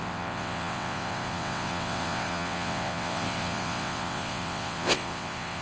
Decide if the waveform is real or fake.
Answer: fake